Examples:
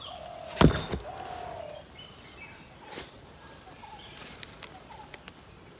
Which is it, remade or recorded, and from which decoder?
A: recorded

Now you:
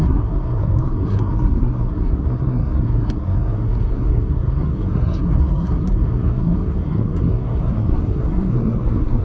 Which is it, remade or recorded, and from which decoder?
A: remade, codec, SNAC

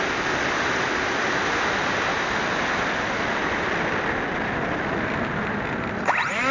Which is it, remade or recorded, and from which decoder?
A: recorded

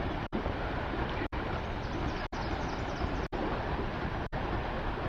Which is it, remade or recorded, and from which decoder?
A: recorded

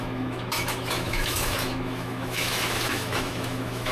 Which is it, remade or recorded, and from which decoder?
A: remade, autoencoder, DAC-VAE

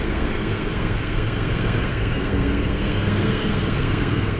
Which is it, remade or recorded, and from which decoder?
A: remade, codec, SNAC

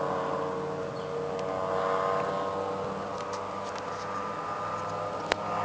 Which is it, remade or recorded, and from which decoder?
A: recorded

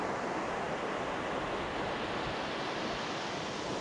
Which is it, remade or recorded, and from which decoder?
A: recorded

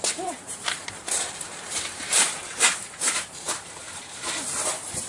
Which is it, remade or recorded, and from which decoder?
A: remade, vocoder, BigVGAN v2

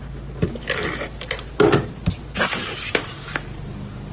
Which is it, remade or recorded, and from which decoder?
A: recorded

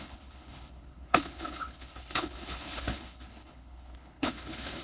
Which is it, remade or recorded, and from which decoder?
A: remade, codec, HILCodec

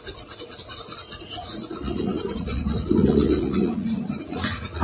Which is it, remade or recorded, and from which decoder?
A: remade, vocoder, Vocos